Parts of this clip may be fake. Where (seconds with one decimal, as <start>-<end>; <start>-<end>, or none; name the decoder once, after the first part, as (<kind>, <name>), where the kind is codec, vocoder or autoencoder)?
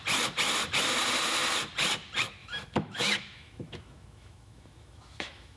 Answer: 2.4-5.6 (autoencoder, DAC-VAE)